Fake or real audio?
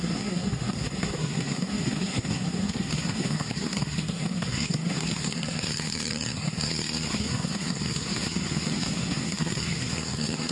fake